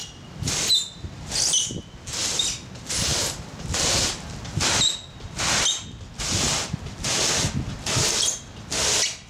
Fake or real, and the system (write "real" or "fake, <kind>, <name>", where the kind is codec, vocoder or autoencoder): real